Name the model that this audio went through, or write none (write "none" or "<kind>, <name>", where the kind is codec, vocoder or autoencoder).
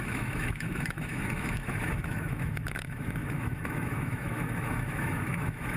autoencoder, DAC-VAE